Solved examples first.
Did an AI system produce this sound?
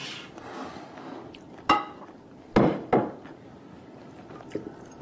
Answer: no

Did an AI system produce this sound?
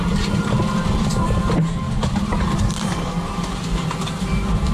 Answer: no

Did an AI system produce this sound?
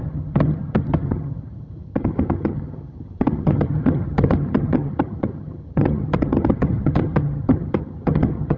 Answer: yes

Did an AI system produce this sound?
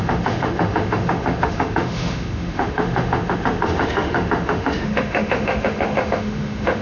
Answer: yes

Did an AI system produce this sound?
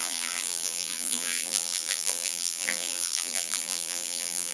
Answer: yes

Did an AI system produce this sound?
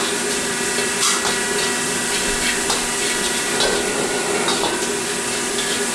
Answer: no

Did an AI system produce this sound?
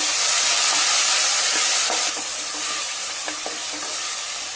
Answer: no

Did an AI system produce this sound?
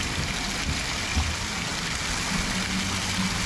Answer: no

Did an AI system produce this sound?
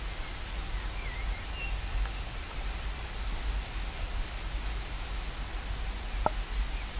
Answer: no